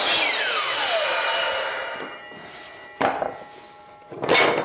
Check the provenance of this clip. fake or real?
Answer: real